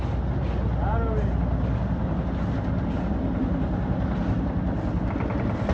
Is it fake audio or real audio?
real